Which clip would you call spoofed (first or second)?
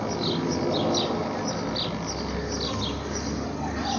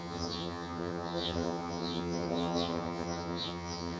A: second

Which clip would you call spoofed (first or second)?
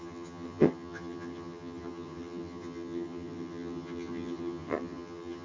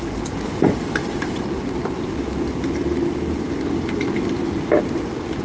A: first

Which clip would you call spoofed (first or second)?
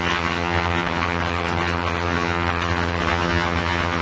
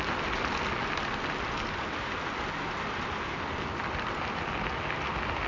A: first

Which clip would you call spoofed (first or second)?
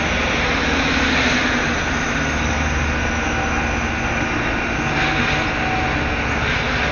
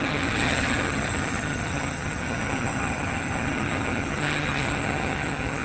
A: second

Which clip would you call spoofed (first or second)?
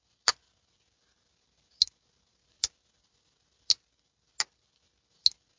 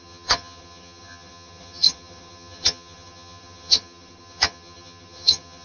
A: second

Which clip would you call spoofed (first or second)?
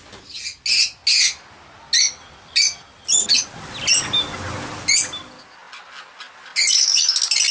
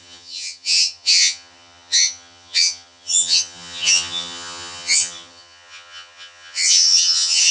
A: second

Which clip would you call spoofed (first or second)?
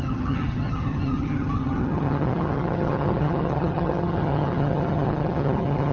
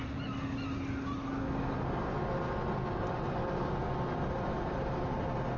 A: first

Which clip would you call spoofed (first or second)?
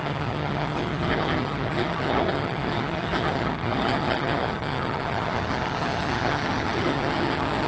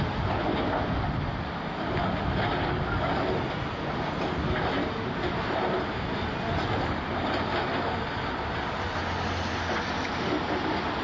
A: first